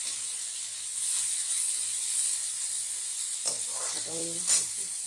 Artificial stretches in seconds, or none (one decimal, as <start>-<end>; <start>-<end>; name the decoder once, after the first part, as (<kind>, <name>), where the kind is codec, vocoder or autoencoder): 0.0-0.9 (vocoder, BigVGAN v2); 1.9-5.1